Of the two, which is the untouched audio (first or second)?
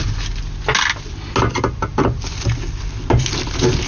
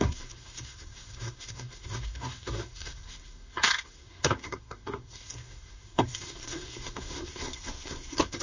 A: first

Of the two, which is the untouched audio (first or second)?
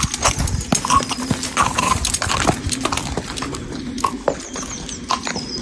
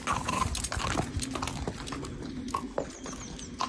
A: second